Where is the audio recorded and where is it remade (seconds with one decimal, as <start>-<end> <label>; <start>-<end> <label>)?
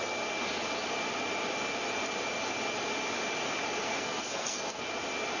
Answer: 0.0-3.8 recorded; 3.8-4.8 remade; 4.8-5.4 recorded